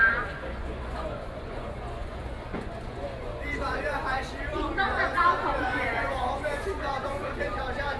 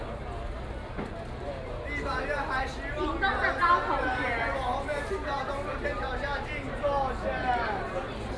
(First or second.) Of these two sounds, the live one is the second